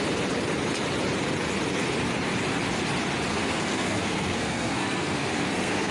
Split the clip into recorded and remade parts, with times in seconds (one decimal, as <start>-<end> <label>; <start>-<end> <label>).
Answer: 0.0-3.3 recorded; 3.3-5.9 remade